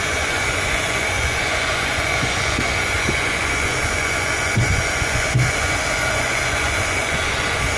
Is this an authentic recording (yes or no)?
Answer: no